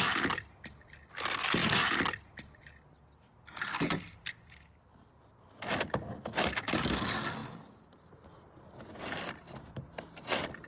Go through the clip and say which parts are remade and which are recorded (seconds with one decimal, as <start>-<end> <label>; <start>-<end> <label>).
0.0-7.4 recorded; 7.4-8.0 remade; 8.0-10.7 recorded